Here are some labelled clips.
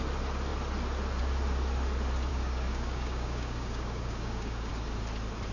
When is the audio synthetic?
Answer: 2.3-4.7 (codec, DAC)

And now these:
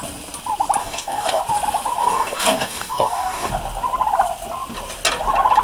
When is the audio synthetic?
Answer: 0.8-1.4 (codec, DAC); 2.0-3.5

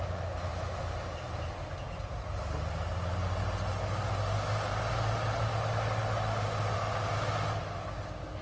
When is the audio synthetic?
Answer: none

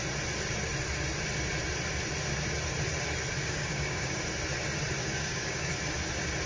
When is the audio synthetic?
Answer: 3.4-4.2 (codec, DAC); 5.0-5.7

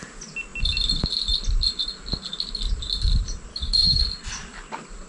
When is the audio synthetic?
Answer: 3.5-4.0 (codec, DAC)

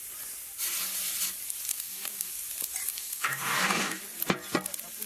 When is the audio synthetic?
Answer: 1.7-2.3 (codec, DAC); 2.9-4.0